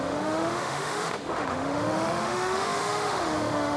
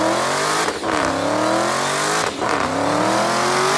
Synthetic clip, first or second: first